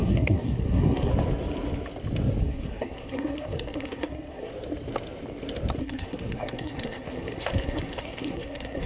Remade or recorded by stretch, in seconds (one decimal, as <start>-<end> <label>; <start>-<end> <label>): 0.0-1.1 remade; 1.1-2.4 recorded; 2.4-4.5 remade; 4.5-5.8 recorded; 5.8-8.9 remade